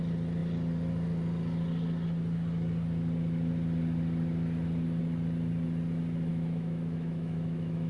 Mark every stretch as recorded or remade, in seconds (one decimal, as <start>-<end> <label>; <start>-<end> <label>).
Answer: 0.0-6.3 recorded; 6.3-7.9 remade